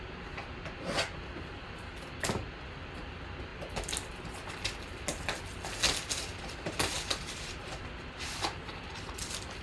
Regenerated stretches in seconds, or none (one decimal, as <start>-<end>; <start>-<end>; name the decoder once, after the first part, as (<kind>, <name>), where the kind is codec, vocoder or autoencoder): none